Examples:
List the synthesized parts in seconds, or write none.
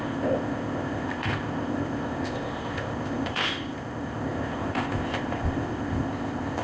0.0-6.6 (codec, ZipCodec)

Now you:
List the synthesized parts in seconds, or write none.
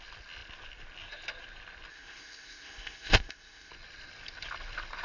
1.9-3.7 (codec, ZipCodec)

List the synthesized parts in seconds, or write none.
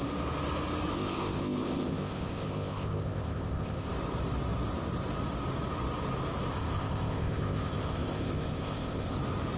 0.9-3.9 (codec, ZipCodec); 6.5-9.2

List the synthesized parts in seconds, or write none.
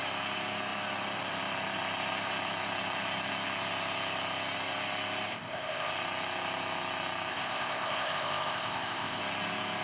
5.3-5.9 (codec, ZipCodec); 7.3-9.2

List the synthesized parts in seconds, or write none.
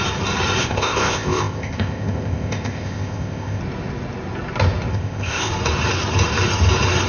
0.6-3.6 (codec, ZipCodec); 4.9-5.5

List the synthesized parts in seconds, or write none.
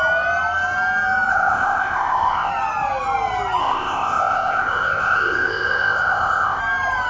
1.3-2.5 (codec, ZipCodec); 3.6-6.6